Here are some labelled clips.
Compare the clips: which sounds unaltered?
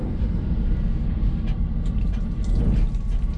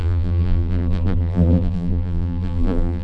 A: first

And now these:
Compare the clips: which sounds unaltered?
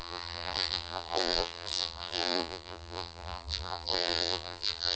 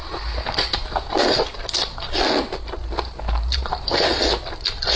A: second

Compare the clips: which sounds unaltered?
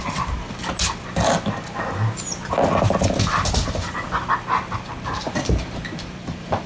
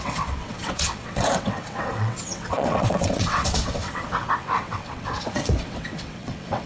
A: first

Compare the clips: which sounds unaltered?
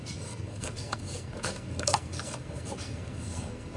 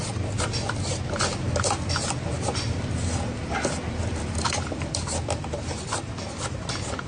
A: second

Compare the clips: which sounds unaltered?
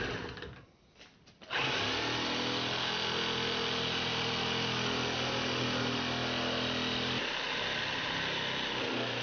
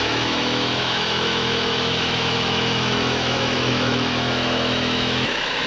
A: first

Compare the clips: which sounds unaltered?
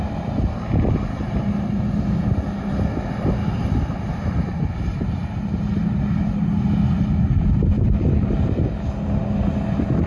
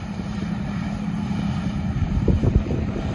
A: first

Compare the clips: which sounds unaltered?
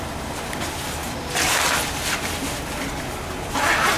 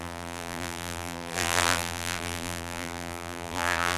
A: first